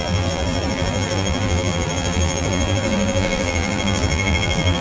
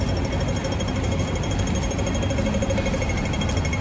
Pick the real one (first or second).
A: second